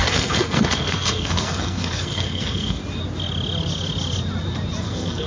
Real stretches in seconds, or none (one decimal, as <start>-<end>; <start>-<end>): 2.8-4.8